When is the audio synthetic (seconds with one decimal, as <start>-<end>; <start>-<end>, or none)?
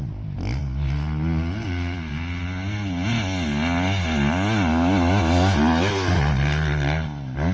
none